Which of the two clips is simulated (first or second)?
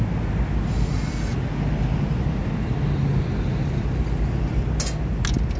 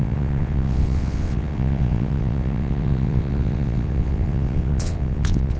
second